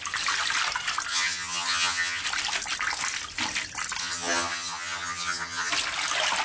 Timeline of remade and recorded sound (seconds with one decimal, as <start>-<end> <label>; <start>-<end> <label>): 0.0-1.1 recorded; 1.1-2.2 remade; 2.2-4.0 recorded; 4.0-5.7 remade; 5.7-6.4 recorded